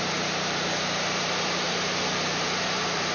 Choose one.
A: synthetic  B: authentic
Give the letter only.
A